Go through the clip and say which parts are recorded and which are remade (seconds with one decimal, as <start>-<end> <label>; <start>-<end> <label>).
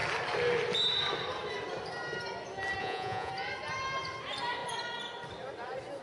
0.0-2.8 recorded; 2.8-3.3 remade; 3.3-6.0 recorded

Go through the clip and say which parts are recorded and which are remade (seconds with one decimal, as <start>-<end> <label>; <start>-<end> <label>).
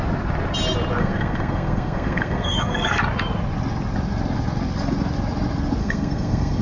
0.0-1.0 recorded; 1.0-3.0 remade; 3.0-5.8 recorded; 5.8-6.6 remade